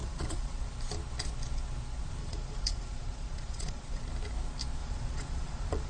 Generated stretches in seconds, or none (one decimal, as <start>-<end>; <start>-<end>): 0.0-0.7; 2.2-4.0; 4.8-5.9